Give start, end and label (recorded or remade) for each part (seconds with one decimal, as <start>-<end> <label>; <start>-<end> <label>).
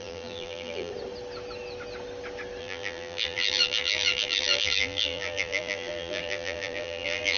0.0-0.9 remade; 0.9-2.6 recorded; 2.6-7.4 remade